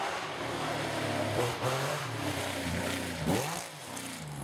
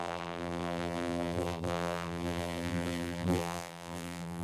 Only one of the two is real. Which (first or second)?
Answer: first